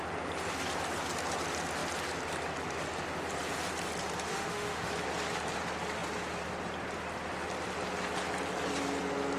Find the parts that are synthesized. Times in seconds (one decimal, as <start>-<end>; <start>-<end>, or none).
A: 4.3-4.9